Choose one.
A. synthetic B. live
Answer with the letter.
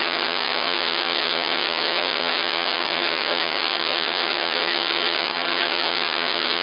A